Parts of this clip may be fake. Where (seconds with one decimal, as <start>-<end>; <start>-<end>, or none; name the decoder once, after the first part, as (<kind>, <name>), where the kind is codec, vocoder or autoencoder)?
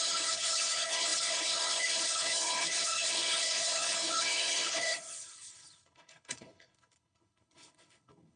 0.0-8.4 (codec, HILCodec)